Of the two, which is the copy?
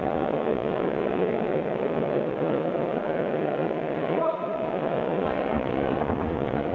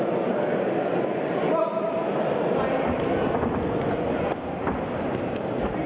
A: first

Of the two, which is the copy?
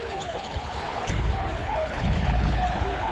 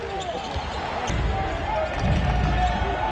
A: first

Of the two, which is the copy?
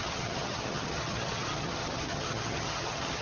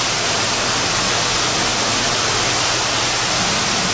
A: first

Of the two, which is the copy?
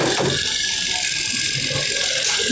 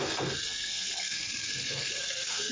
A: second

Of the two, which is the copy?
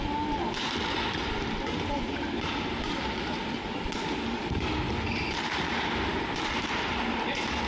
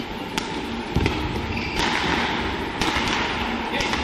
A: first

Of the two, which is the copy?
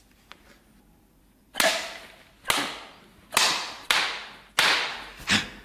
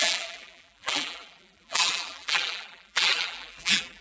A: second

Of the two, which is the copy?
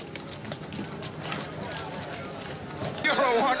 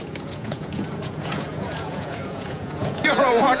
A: second